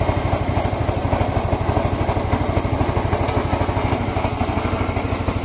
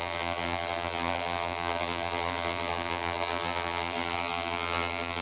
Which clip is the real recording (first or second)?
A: first